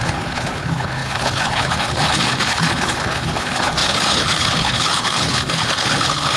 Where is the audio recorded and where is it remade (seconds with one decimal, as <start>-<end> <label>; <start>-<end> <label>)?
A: 0.0-6.4 remade